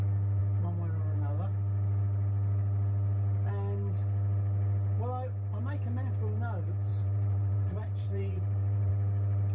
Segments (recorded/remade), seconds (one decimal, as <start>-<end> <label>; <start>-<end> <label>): 0.0-6.9 recorded; 6.9-8.9 remade; 8.9-9.5 recorded